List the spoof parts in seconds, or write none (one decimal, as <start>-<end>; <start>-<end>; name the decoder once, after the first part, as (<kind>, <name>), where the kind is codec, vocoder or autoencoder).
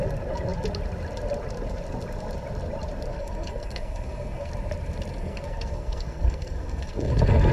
3.1-4.5 (codec, SNAC); 5.2-7.5